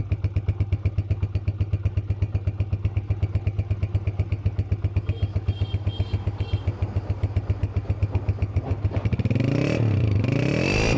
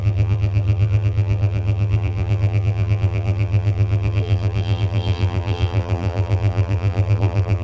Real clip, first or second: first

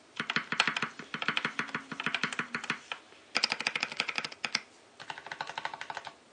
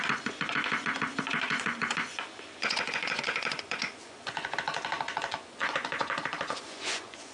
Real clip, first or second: first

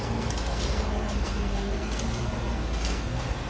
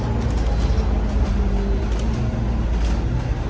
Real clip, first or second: second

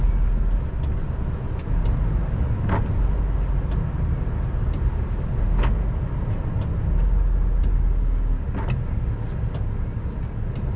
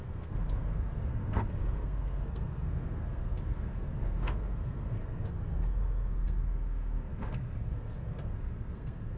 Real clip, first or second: first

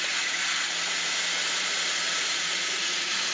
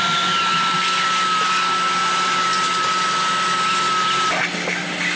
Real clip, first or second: second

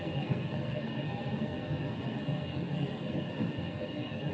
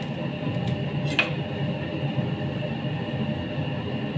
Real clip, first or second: second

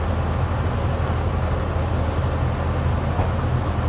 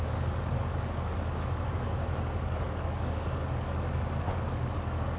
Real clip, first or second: first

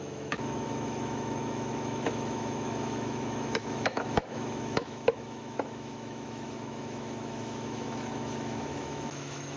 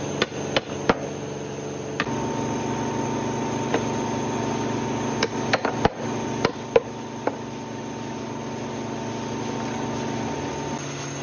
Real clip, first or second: second